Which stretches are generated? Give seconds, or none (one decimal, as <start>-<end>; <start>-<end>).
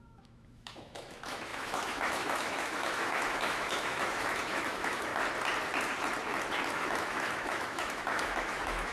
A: 0.0-5.1; 6.7-8.9